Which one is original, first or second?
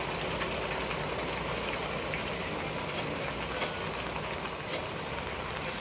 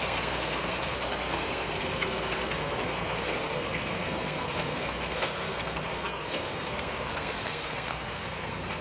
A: first